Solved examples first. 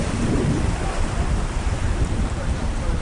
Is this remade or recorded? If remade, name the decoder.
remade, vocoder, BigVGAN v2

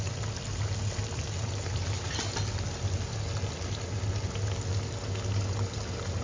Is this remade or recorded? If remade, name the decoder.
recorded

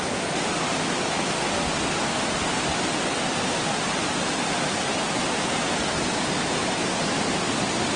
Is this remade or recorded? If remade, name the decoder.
recorded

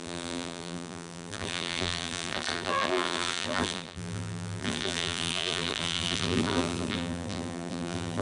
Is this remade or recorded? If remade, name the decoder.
remade, vocoder, BigVGAN v2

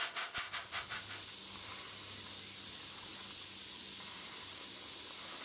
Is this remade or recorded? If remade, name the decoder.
recorded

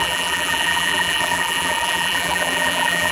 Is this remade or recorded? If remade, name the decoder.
remade, vocoder, BigVGAN v2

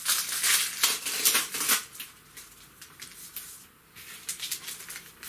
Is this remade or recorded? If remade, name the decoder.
remade, vocoder, BigVGAN v2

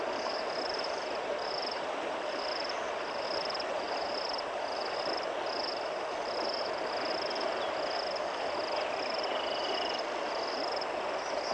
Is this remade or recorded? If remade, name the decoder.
recorded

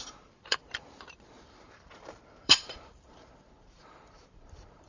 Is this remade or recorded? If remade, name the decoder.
remade, vocoder, BigVGAN v2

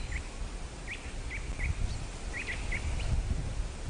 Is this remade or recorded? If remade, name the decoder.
recorded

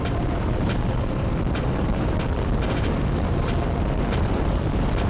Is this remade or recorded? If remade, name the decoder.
remade, vocoder, BigVGAN v2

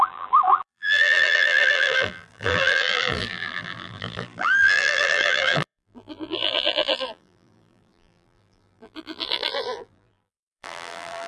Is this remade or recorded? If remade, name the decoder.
remade, vocoder, BigVGAN v2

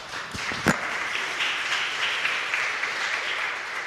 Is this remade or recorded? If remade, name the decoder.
remade, vocoder, BigVGAN v2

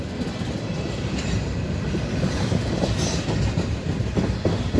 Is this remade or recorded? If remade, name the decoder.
recorded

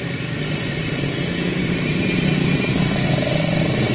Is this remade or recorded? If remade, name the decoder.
remade, vocoder, BigVGAN v2